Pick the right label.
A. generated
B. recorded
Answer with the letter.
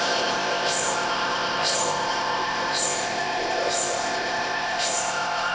A